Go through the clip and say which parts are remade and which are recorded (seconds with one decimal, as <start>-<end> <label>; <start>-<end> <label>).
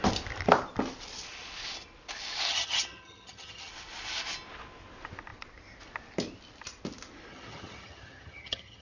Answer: 0.0-2.5 recorded; 2.5-3.7 remade; 3.7-7.3 recorded; 7.3-8.8 remade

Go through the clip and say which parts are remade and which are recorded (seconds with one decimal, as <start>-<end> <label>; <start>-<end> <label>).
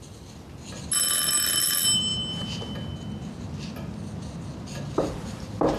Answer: 0.0-5.8 recorded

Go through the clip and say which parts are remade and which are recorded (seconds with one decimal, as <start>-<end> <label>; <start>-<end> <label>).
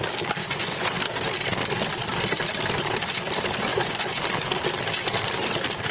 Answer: 0.0-0.4 recorded; 0.4-1.0 remade; 1.0-3.7 recorded; 3.7-4.2 remade; 4.2-5.9 recorded